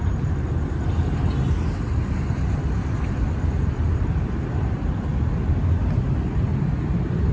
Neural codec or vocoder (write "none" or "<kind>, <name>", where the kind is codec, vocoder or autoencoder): none